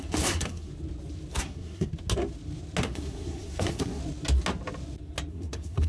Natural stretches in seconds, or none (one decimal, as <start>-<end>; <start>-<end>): 0.7-1.3; 1.9-2.8; 4.0-5.3